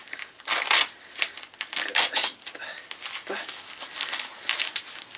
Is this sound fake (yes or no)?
no